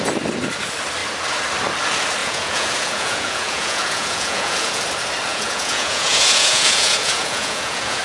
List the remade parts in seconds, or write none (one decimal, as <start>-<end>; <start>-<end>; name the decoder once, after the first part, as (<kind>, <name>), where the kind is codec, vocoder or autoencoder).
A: 2.2-4.8 (vocoder, Vocos); 5.3-8.0